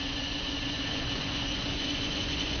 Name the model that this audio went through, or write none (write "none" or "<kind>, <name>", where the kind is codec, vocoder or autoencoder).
vocoder, Vocos